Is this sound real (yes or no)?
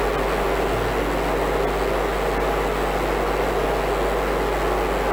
yes